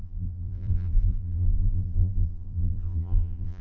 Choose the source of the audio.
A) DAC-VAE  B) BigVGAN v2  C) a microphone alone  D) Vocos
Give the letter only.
B